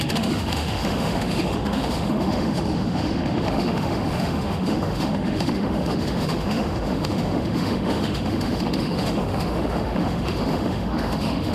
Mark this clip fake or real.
fake